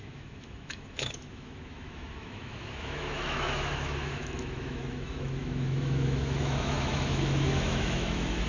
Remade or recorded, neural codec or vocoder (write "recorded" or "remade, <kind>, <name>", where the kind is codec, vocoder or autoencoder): remade, autoencoder, DAC-VAE